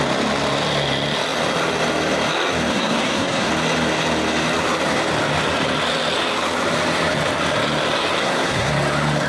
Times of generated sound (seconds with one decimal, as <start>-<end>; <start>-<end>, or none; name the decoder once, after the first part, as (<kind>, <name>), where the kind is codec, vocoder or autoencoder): 2.7-3.5 (codec, SNAC); 8.2-8.7